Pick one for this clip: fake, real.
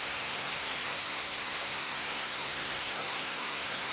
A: fake